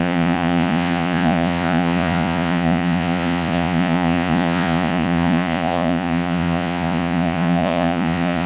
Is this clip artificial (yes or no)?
yes